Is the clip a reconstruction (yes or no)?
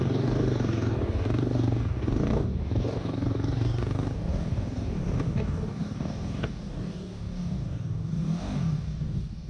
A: yes